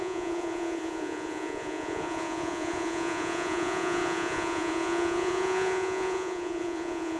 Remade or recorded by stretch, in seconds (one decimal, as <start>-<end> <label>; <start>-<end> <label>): 0.0-7.2 remade